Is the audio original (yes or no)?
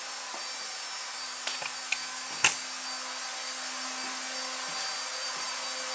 yes